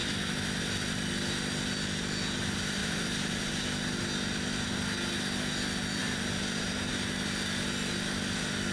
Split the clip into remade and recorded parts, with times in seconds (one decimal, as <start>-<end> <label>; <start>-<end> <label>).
0.0-2.8 recorded; 2.8-3.5 remade; 3.5-6.0 recorded; 6.0-6.9 remade; 6.9-8.7 recorded